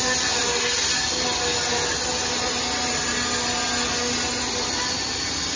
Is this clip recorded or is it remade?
recorded